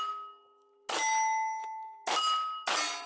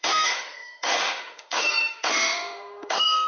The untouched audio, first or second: first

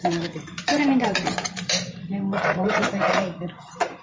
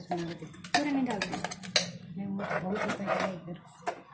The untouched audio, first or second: second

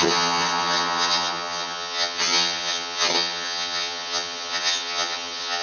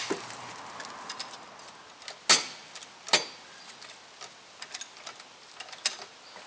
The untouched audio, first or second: second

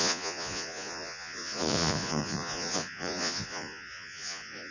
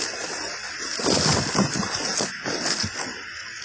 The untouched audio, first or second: second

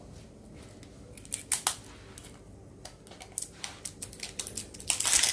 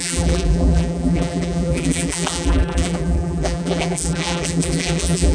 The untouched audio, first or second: first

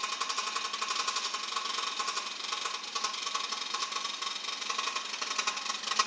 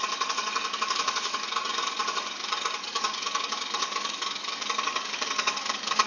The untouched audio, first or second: first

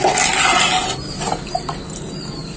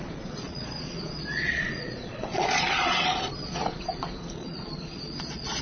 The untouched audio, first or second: first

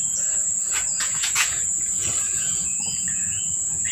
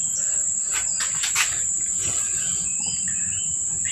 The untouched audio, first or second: second